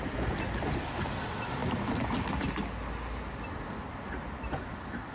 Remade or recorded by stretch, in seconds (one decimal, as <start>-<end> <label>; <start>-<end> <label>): 0.0-5.1 recorded

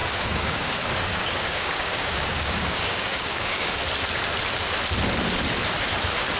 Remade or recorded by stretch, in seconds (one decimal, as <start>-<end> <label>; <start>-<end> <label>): 0.0-3.8 remade; 3.8-6.4 recorded